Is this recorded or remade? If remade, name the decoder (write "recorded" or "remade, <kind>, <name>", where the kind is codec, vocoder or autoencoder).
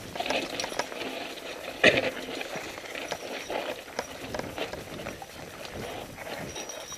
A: recorded